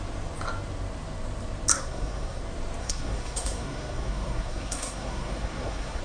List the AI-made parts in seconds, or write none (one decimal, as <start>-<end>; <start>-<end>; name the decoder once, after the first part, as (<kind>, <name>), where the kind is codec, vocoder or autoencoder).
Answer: 1.7-2.4 (codec, SNAC); 2.8-6.0